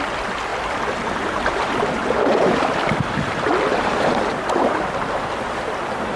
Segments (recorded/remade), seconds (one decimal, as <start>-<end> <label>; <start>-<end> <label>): 0.0-6.2 recorded